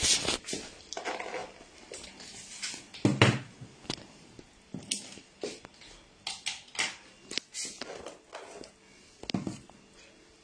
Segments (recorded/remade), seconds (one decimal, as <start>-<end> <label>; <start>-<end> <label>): 0.0-10.4 recorded